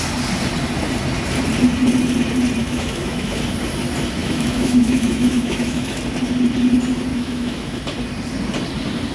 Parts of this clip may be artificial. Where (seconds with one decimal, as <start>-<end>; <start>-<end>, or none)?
2.6-3.4; 4.2-6.0; 7.1-7.8